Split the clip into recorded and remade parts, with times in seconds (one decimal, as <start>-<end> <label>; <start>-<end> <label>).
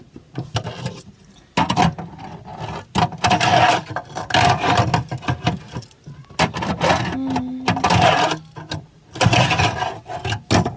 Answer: 0.0-10.8 recorded